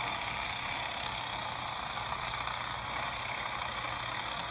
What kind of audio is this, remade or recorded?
recorded